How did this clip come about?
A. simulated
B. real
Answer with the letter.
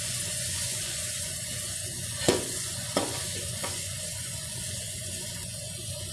A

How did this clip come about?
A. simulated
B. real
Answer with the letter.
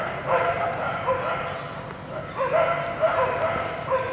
B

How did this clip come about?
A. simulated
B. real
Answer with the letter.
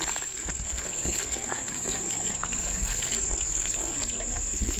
A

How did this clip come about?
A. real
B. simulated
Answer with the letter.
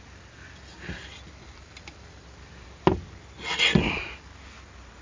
A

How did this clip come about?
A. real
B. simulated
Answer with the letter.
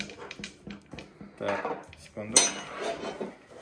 A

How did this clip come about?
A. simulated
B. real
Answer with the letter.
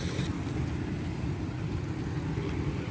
B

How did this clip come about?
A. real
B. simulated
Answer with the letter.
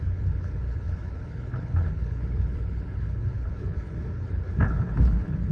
B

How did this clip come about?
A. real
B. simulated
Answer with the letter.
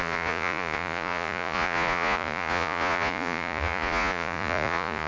B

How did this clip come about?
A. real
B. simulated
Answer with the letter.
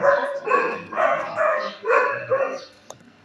B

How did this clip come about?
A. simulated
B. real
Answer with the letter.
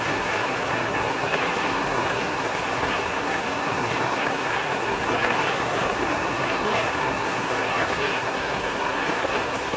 A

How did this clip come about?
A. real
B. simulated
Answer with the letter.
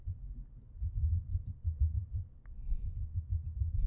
A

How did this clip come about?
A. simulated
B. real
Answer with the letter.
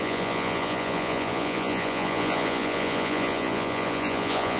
A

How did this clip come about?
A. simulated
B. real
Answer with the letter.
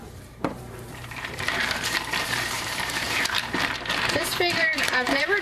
A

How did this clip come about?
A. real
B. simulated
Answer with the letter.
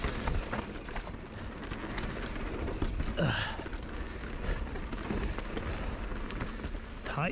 A